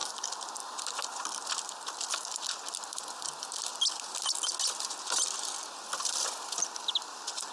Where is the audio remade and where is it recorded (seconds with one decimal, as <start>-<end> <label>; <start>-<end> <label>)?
0.0-7.5 recorded